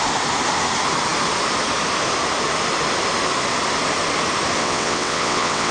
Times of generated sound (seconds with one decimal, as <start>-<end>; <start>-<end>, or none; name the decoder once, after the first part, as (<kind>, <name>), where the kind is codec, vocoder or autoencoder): 4.6-5.7 (vocoder, WaveNeXt)